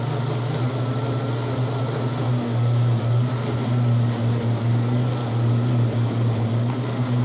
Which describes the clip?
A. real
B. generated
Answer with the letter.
A